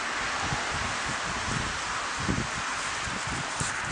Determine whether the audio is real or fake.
real